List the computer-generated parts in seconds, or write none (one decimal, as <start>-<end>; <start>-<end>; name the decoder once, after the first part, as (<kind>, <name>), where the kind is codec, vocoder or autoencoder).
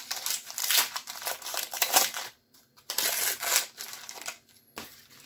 0.6-2.9 (vocoder, BigVGAN v2)